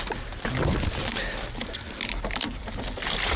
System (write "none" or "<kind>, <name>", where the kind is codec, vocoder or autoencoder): none